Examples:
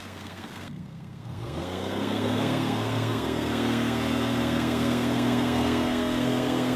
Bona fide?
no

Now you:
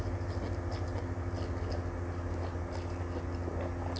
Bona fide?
yes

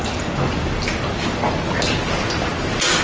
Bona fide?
yes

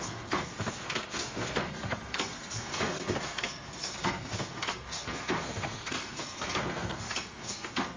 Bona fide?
no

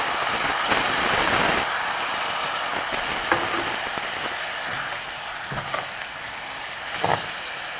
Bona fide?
yes